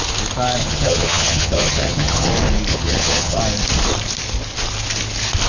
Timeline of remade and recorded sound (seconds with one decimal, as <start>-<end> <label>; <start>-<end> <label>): 0.0-0.6 recorded; 0.6-2.3 remade; 2.3-2.7 recorded; 2.7-3.4 remade; 3.4-5.5 recorded